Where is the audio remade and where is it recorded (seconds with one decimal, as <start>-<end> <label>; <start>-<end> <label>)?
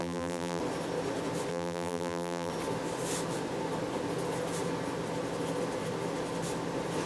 0.0-0.6 remade; 0.6-1.5 recorded; 1.5-2.5 remade; 2.5-7.1 recorded